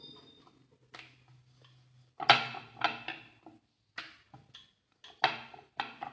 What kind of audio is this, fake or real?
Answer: real